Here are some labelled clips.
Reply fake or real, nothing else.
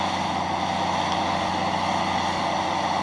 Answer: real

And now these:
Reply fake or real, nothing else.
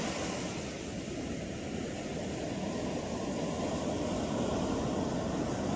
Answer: real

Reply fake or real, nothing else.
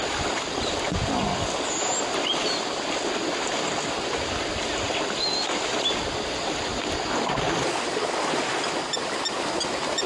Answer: real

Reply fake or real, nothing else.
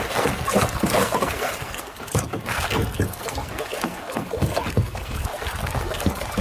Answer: fake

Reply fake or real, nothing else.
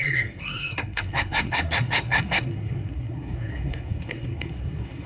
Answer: fake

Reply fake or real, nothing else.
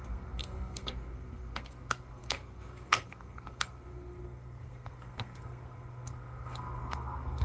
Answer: fake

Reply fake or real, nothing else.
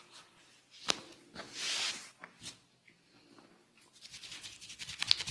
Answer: real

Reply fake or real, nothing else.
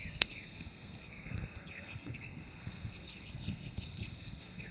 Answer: fake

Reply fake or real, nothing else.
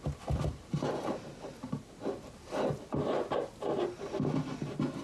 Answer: real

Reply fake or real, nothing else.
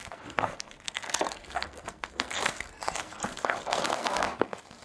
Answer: fake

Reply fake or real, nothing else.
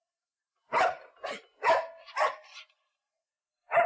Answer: real